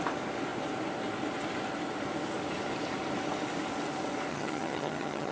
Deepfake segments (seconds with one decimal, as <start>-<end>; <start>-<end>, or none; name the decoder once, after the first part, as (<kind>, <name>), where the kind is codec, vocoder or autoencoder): 4.3-5.3 (vocoder, HiFi-GAN)